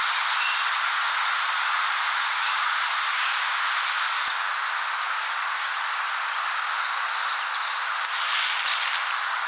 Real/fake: real